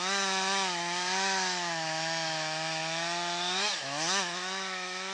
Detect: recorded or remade remade